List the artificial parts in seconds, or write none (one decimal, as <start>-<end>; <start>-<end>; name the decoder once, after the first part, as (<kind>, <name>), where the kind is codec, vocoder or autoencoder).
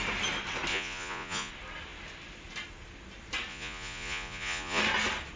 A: 0.7-1.5 (vocoder, Vocos); 3.5-4.8